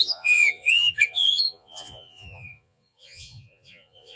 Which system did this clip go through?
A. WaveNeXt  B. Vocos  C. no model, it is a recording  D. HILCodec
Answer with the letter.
B